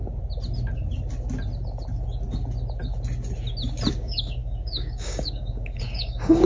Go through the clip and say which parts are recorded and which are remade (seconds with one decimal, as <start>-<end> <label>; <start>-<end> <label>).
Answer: 0.0-3.9 recorded; 3.9-6.5 remade